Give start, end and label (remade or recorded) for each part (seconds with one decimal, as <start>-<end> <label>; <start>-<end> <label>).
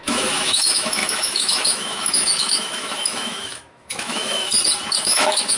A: 0.0-4.5 remade; 4.5-5.0 recorded; 5.0-5.6 remade